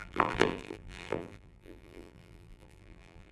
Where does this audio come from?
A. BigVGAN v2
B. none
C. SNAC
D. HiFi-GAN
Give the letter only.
A